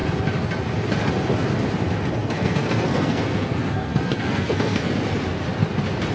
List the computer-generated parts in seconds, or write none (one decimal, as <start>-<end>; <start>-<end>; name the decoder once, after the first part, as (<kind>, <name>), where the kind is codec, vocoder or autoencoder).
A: 2.2-5.0 (codec, SNAC)

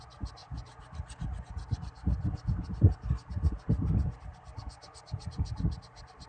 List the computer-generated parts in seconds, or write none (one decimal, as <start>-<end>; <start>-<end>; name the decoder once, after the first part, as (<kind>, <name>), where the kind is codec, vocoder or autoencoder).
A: none

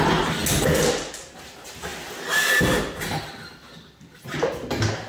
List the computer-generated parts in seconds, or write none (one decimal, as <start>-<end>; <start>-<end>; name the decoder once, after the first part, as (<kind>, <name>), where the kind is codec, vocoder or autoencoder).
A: none

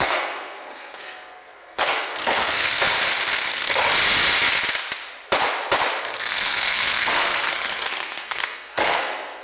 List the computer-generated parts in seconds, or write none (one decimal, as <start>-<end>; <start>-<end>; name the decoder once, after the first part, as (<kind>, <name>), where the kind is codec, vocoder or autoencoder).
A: 0.0-2.8 (codec, SNAC); 3.5-3.9; 6.0-9.4